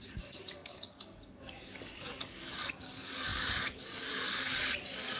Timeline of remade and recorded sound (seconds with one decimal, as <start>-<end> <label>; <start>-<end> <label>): 0.0-5.2 remade